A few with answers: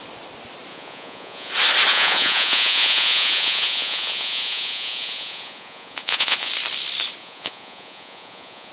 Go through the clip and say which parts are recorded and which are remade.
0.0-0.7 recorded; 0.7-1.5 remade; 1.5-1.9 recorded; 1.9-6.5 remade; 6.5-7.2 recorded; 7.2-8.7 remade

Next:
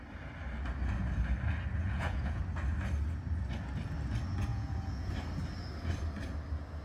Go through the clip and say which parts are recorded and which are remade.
0.0-1.8 recorded; 1.8-2.4 remade; 2.4-4.5 recorded; 4.5-5.1 remade; 5.1-6.8 recorded